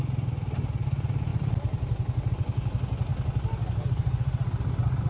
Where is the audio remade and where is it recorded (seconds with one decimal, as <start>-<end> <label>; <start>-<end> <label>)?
0.0-1.3 recorded; 1.3-2.3 remade; 2.3-5.1 recorded